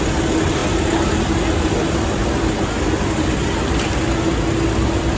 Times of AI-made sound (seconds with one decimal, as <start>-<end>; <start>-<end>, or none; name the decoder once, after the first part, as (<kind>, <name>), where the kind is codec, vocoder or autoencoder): none